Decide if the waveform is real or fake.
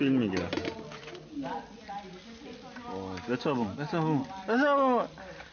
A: real